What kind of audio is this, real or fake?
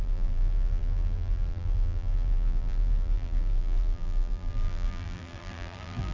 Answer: fake